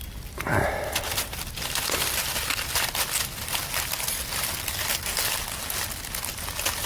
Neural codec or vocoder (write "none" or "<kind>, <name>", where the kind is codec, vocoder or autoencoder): none